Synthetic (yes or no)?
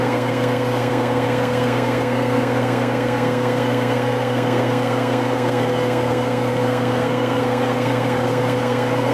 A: yes